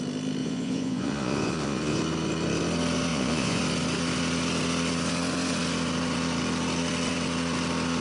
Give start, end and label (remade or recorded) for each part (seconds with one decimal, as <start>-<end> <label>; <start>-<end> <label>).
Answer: 0.0-0.4 recorded; 0.4-2.0 remade; 2.0-3.1 recorded; 3.1-3.6 remade; 3.6-8.0 recorded